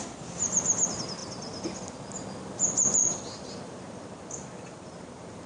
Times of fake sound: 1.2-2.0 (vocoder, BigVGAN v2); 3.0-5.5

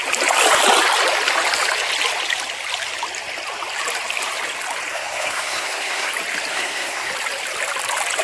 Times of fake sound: 4.9-6.1 (codec, SNAC); 6.5-7.1

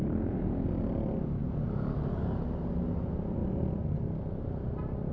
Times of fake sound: none